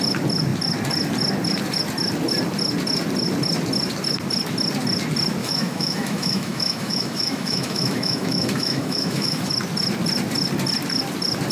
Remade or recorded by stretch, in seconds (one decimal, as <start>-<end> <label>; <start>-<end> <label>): 0.0-5.4 recorded; 5.4-9.5 remade; 9.5-11.5 recorded